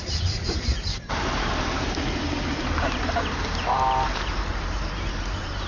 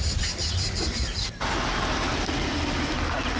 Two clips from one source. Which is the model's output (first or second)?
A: first